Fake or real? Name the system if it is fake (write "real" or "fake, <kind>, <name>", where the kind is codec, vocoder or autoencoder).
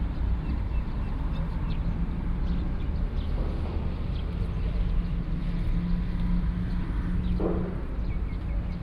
real